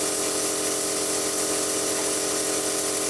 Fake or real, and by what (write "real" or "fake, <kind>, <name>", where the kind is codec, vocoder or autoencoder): real